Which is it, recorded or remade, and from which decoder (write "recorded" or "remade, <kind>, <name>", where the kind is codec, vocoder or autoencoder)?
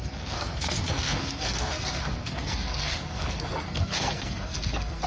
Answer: remade, codec, SNAC